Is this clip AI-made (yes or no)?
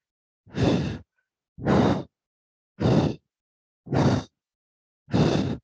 no